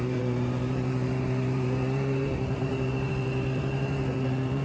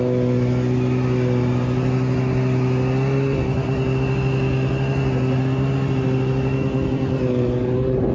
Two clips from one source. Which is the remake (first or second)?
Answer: first